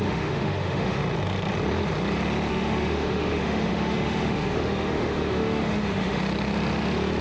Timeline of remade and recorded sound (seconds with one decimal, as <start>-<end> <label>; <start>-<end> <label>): 0.0-1.0 remade; 1.0-2.5 recorded; 2.5-6.2 remade; 6.2-7.2 recorded